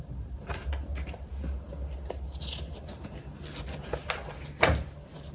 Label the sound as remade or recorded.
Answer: recorded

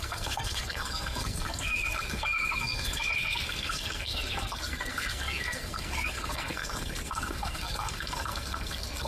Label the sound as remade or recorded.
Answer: remade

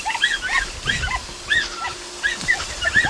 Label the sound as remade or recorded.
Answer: recorded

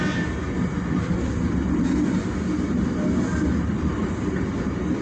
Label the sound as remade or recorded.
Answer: recorded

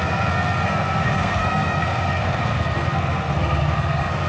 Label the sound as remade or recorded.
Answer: remade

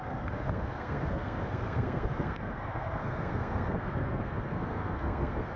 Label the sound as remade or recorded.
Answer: remade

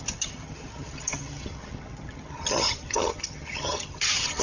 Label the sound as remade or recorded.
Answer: remade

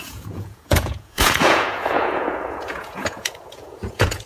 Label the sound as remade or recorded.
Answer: remade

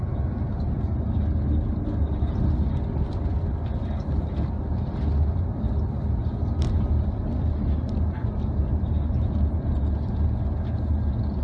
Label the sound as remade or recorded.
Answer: recorded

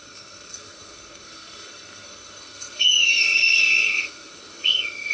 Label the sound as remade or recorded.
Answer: remade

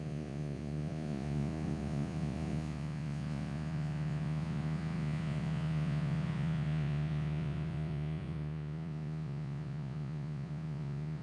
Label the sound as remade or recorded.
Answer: remade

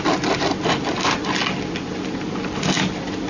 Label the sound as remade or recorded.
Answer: recorded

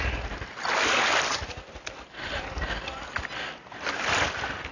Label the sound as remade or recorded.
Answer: recorded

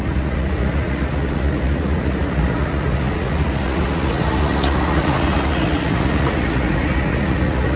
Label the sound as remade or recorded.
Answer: remade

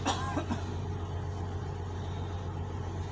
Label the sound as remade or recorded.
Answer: recorded